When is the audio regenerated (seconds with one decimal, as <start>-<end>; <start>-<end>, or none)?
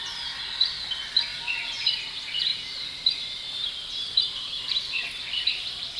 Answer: none